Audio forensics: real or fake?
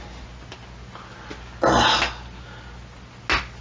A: real